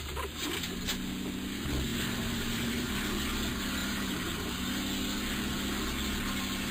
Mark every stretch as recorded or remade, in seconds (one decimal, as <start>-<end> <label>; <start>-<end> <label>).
0.0-1.9 recorded; 1.9-2.9 remade; 2.9-3.8 recorded; 3.8-4.5 remade; 4.5-6.7 recorded